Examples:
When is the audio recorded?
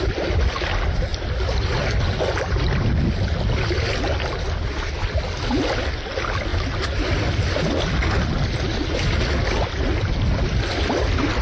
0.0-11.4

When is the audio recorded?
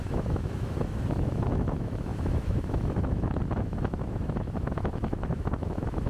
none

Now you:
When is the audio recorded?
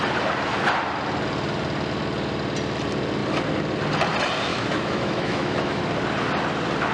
0.0-4.5; 5.8-6.9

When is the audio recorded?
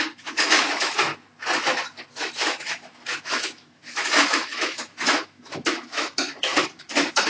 1.1-2.1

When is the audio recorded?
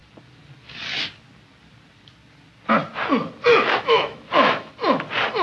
0.0-3.5; 4.7-5.4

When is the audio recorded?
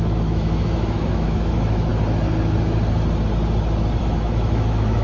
1.9-4.0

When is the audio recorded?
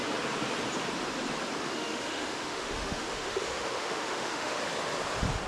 0.0-1.6; 4.6-5.5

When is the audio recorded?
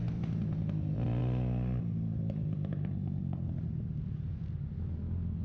0.0-5.4